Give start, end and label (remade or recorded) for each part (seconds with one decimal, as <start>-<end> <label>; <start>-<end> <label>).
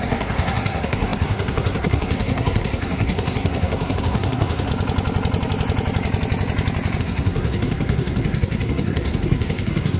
0.0-4.7 remade; 4.7-7.0 recorded; 7.0-10.0 remade